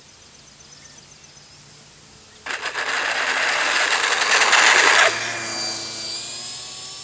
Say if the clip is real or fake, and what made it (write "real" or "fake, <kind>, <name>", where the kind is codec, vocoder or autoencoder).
real